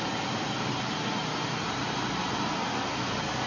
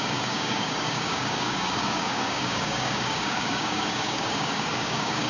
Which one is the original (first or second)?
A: first